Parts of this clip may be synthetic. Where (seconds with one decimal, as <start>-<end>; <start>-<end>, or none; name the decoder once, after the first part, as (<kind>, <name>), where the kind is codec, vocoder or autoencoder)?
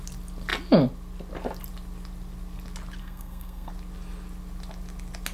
3.0-3.7 (codec, SNAC)